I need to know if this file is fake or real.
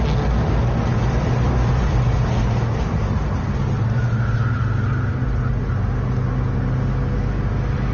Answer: real